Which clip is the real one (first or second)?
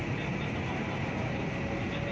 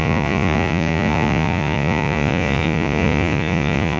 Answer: first